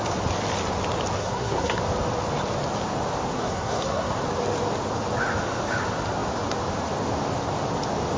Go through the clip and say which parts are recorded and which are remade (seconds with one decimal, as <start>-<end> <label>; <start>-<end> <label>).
0.0-1.2 recorded; 1.2-1.8 remade; 1.8-3.3 recorded; 3.3-4.2 remade; 4.2-8.2 recorded